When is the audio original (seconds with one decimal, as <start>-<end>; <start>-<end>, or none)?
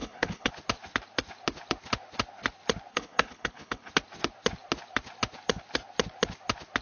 0.5-2.9; 3.9-6.8